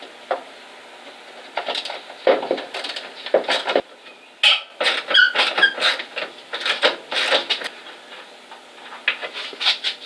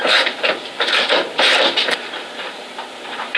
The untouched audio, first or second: first